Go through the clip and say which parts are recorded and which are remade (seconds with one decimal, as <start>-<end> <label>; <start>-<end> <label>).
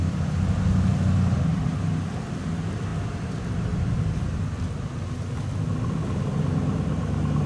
0.0-7.5 recorded